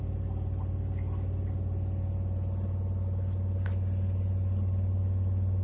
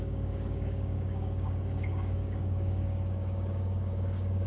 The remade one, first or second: second